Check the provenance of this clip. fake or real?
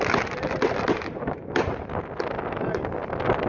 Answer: real